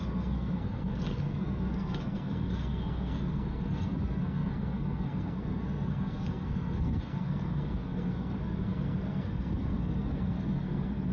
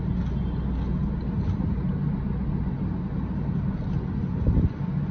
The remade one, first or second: first